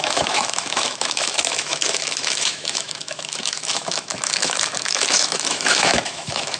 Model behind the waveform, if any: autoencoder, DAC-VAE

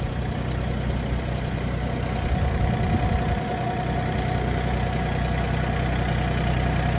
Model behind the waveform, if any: none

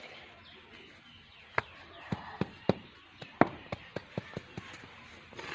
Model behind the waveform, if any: none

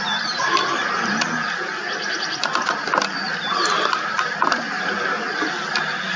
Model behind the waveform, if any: none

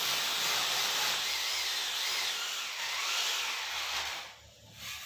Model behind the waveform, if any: none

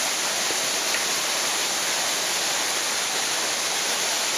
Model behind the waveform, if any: none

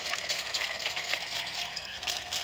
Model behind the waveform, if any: codec, SNAC